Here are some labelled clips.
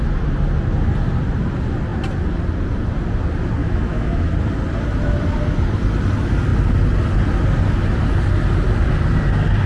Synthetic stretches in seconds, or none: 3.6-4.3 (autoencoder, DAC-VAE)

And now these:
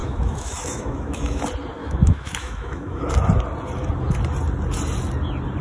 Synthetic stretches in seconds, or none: 0.0-1.4 (autoencoder, DAC-VAE); 1.8-3.1

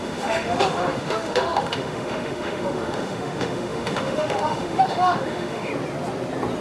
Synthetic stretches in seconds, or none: 0.0-5.7 (autoencoder, DAC-VAE)

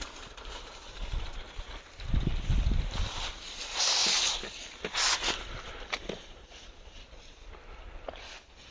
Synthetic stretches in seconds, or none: none

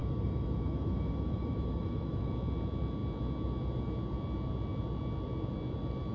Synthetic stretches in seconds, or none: 0.0-2.3 (autoencoder, DAC-VAE)

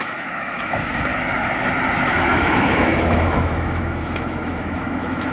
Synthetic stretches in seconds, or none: 0.0-1.1 (autoencoder, DAC-VAE); 2.0-5.3